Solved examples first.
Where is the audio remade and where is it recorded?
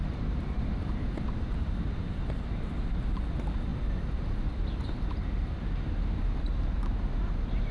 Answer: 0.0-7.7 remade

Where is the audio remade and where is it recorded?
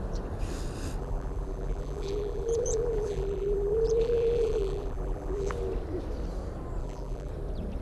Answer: 0.0-1.0 recorded; 1.0-5.5 remade; 5.5-6.8 recorded; 6.8-7.3 remade; 7.3-7.8 recorded